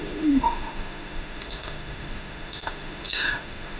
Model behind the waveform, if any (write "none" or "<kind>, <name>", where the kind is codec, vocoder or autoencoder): autoencoder, DAC-VAE